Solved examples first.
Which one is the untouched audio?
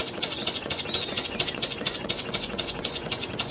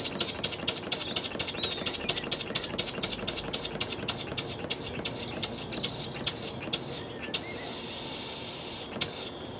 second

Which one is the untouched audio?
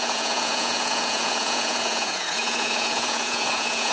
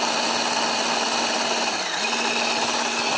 second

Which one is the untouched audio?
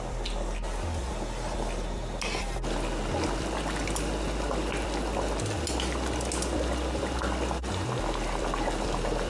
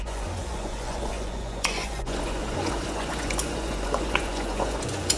first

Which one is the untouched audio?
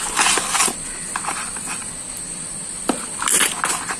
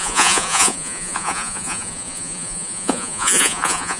first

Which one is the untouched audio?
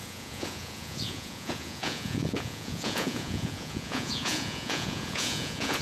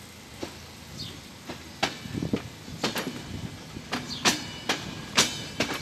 second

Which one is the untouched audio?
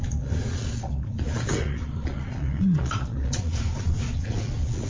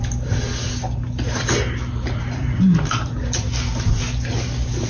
second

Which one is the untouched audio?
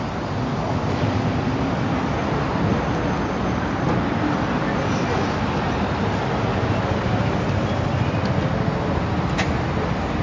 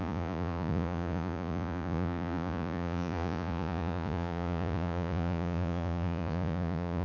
first